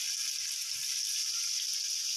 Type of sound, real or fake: real